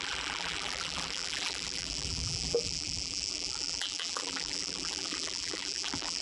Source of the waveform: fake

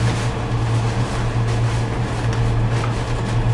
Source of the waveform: real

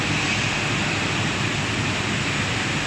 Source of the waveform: fake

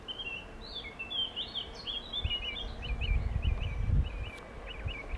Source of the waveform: real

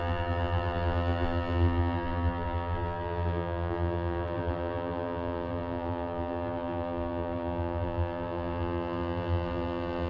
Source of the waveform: fake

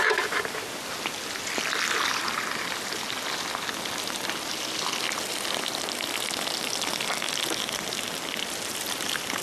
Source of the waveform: real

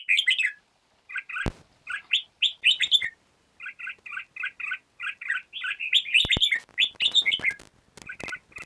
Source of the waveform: real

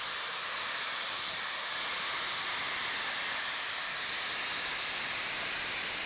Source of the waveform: fake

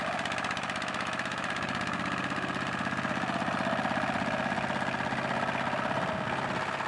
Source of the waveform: real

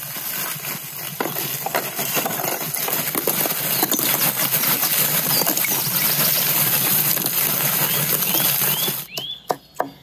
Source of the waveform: real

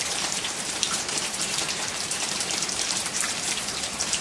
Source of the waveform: fake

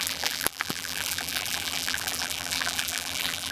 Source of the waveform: fake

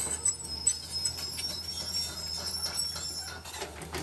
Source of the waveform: real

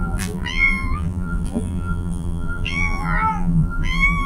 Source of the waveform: fake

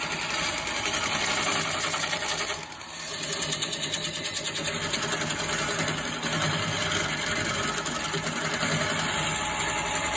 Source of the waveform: real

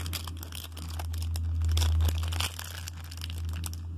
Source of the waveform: real